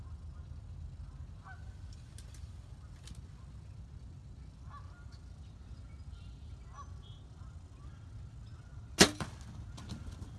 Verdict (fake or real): real